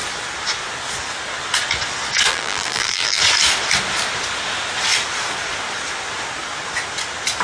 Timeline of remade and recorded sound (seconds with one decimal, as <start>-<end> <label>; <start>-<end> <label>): 0.0-2.3 recorded; 2.3-3.2 remade; 3.2-7.4 recorded